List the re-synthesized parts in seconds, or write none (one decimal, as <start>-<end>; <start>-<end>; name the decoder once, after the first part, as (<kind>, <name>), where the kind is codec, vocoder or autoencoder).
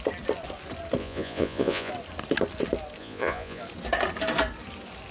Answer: 1.0-1.9 (vocoder, Vocos); 3.0-3.6